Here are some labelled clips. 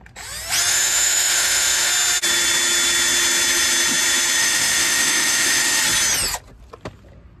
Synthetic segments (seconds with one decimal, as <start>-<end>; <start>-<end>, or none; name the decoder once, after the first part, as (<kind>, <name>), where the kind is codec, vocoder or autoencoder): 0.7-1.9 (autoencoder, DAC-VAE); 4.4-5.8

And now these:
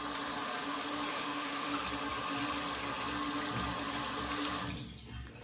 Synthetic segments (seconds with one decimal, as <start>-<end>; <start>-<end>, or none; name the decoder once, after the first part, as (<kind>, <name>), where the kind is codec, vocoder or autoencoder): 1.1-1.7 (autoencoder, DAC-VAE)

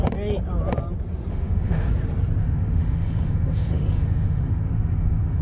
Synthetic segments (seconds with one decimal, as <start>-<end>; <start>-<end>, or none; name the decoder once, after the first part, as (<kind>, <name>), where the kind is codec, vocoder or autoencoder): 1.3-1.9 (autoencoder, DAC-VAE); 2.4-5.4

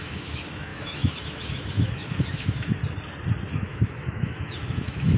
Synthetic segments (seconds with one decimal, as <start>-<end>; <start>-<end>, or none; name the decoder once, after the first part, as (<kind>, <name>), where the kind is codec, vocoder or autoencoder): 0.0-2.8 (autoencoder, DAC-VAE); 3.5-5.2